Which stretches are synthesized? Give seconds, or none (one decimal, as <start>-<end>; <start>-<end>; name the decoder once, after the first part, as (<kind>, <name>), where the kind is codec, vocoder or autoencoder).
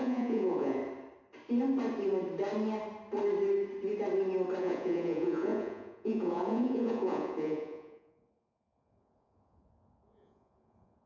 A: 0.0-0.8 (vocoder, Vocos); 4.6-11.1